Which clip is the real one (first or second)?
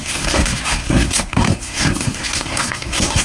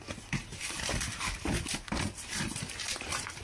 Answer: second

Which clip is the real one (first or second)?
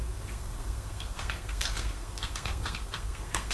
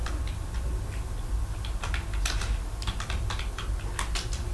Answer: second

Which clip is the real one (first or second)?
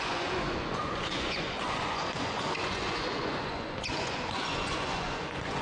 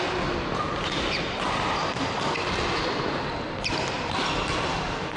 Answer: second